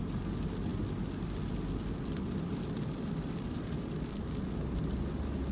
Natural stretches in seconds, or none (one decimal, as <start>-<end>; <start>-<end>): 0.0-5.5